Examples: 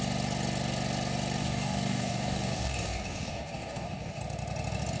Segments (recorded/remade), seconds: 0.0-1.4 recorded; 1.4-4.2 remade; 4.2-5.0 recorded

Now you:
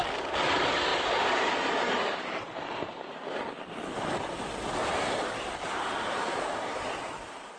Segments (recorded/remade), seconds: 0.0-0.9 recorded; 0.9-2.4 remade; 2.4-4.8 recorded; 4.8-7.6 remade